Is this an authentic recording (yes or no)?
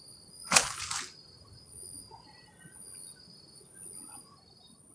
yes